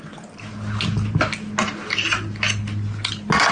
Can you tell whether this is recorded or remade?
recorded